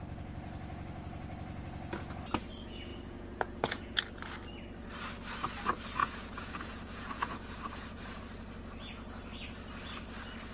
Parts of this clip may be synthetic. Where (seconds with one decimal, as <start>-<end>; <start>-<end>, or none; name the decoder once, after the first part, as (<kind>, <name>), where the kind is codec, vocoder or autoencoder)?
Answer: 2.9-4.0 (vocoder, Vocos); 6.0-8.2